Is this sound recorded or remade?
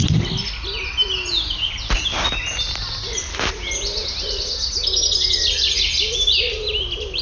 recorded